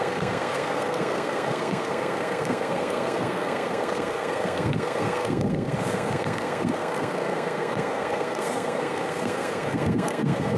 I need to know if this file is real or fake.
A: fake